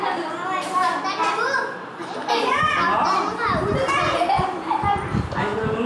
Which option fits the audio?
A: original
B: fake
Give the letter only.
A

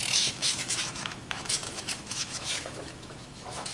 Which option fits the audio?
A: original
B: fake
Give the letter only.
B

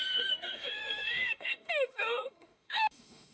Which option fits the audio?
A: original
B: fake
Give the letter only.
B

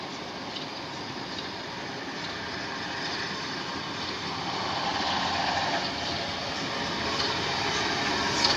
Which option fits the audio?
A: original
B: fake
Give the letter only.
A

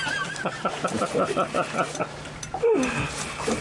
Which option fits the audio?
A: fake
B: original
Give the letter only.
B